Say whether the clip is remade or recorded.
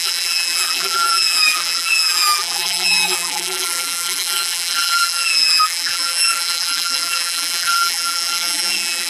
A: remade